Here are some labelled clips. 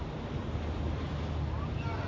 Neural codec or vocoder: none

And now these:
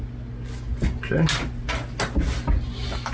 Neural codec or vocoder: none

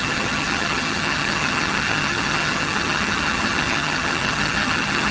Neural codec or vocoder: vocoder, HiFi-GAN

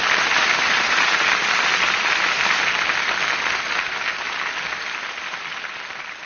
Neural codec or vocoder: none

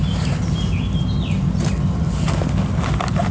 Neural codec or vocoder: none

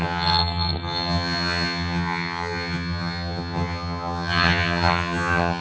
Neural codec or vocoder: vocoder, HiFi-GAN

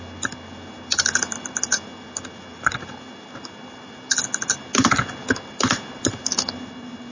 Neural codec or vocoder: none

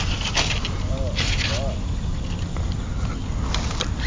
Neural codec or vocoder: none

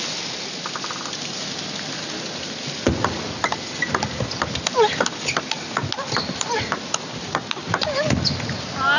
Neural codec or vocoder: none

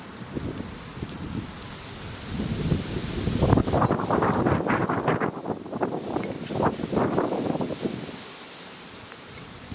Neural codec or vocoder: none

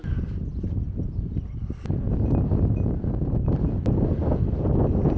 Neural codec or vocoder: none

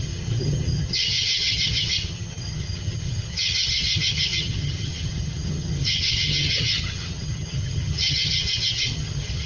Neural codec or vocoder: vocoder, HiFi-GAN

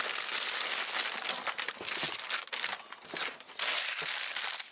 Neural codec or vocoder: none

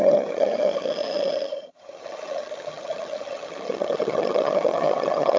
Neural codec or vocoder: vocoder, HiFi-GAN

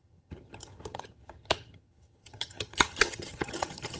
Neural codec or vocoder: vocoder, HiFi-GAN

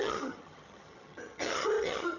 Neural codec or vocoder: vocoder, HiFi-GAN